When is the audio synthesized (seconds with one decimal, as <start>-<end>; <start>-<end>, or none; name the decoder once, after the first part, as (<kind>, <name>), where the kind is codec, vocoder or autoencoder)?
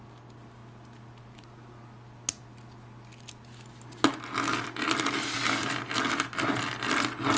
none